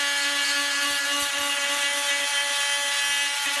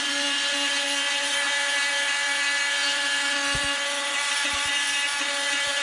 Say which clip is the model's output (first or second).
second